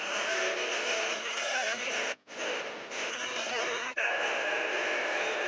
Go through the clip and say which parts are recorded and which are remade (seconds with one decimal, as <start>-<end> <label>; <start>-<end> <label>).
0.0-1.1 recorded; 1.1-1.9 remade; 1.9-3.1 recorded; 3.1-4.1 remade; 4.1-5.5 recorded